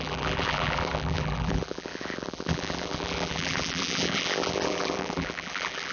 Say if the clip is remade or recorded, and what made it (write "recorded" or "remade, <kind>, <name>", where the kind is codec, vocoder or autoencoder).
remade, vocoder, BigVGAN v2